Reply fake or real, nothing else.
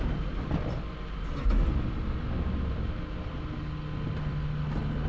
real